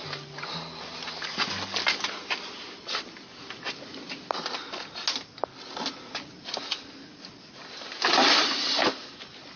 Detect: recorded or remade recorded